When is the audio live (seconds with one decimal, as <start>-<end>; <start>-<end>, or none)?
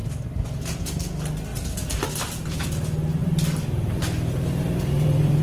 0.0-1.5; 2.1-3.2